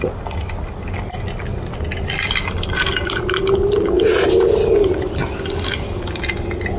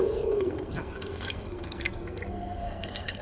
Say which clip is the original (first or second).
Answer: first